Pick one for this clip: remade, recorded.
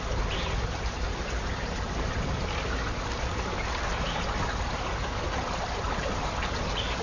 recorded